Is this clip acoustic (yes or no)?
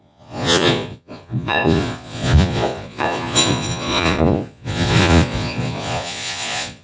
no